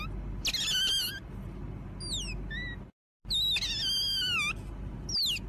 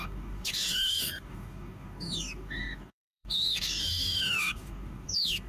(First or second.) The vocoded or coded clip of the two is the second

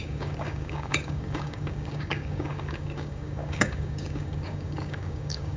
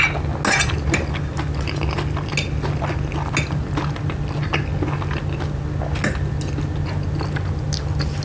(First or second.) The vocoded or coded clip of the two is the first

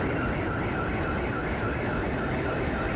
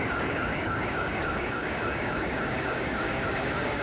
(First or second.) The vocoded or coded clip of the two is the second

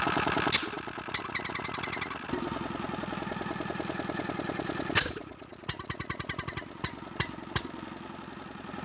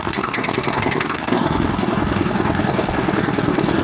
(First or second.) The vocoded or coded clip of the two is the second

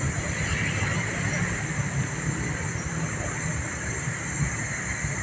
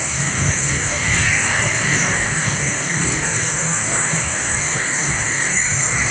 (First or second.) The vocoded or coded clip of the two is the second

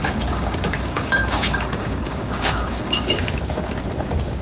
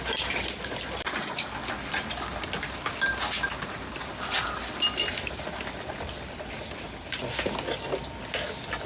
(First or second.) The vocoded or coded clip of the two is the first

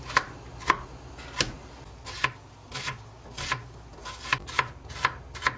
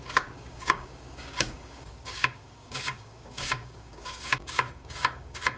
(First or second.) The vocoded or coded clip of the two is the second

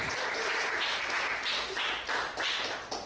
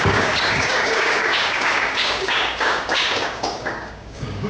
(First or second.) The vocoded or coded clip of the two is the second